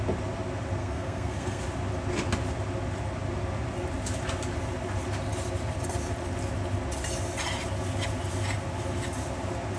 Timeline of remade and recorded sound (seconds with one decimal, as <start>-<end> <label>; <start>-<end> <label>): 0.0-0.8 recorded; 0.8-1.6 remade; 1.6-9.8 recorded